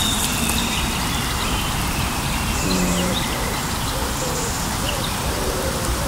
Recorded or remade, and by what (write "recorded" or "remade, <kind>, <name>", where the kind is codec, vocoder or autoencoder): remade, vocoder, BigVGAN v2